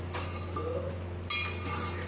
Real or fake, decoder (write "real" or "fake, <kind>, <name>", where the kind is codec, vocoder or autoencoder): real